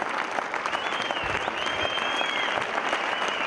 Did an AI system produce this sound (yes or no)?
no